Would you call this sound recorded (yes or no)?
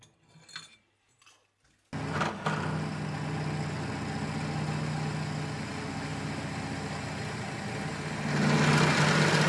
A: yes